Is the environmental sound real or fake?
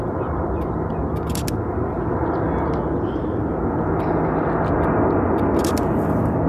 real